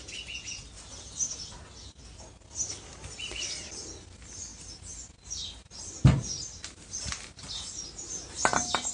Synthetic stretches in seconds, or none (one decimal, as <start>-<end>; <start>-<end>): none